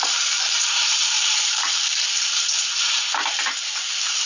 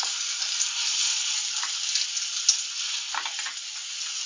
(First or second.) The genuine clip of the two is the second